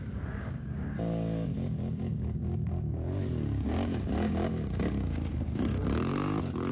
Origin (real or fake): fake